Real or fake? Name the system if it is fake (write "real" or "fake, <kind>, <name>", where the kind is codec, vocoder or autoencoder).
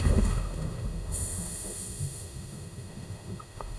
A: fake, autoencoder, DAC-VAE